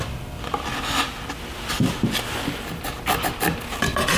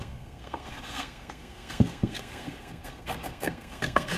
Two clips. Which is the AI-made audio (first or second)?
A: second